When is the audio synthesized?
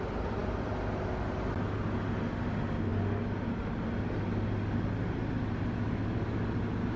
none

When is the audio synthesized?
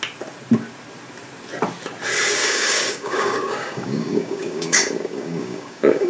2.4-6.1 (codec, DAC)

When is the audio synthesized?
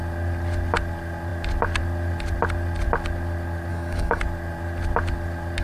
3.7-4.2 (codec, DAC)